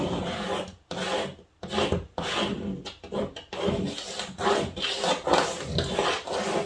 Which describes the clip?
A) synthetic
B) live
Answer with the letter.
B